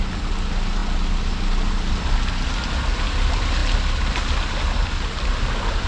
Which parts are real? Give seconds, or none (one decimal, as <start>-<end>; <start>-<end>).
0.0-5.9

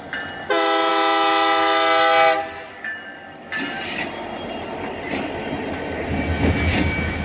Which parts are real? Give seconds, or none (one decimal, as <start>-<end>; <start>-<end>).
0.0-7.2

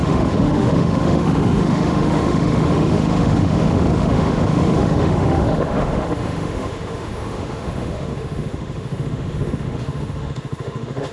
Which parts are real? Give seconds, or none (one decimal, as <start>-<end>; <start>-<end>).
none

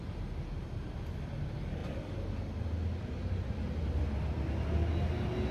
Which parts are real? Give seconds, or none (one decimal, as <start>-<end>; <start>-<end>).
0.0-5.5